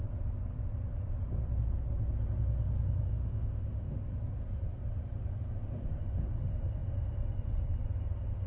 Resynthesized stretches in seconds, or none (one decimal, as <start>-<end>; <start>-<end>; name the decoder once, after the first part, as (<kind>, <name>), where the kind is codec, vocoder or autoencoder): 3.1-4.0 (autoencoder, DAC-VAE)